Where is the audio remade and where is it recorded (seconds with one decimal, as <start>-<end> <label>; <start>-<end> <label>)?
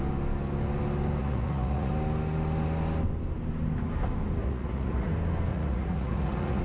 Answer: 0.0-1.2 recorded; 1.2-1.9 remade; 1.9-4.4 recorded; 4.4-5.1 remade; 5.1-5.5 recorded; 5.5-6.6 remade